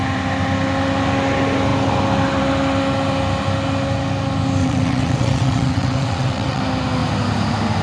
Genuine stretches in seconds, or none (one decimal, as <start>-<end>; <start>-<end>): 0.0-4.6; 6.6-7.8